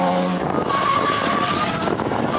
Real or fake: real